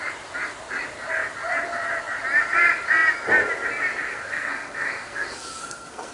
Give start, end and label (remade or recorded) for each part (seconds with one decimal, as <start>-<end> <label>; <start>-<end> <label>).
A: 0.0-4.1 recorded; 4.1-6.1 remade